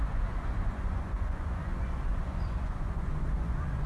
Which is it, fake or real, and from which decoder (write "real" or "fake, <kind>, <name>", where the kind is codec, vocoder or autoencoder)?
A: fake, vocoder, Vocos